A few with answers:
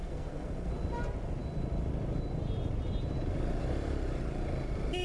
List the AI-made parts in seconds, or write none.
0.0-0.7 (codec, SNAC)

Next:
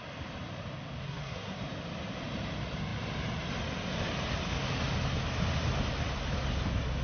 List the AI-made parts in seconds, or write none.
1.0-1.6 (codec, SNAC)

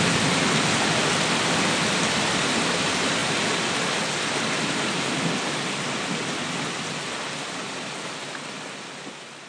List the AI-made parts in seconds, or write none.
none

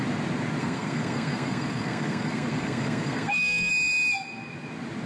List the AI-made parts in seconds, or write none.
0.6-3.7 (codec, SNAC)

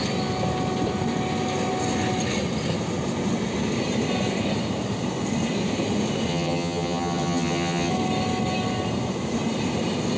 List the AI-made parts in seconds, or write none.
6.3-7.9 (vocoder, HiFi-GAN)

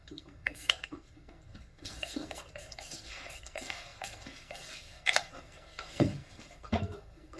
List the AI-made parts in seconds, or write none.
0.0-7.4 (codec, SNAC)

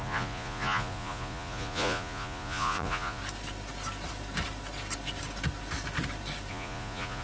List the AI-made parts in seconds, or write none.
0.0-3.2 (vocoder, Vocos); 6.5-7.2